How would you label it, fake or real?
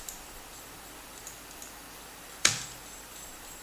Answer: fake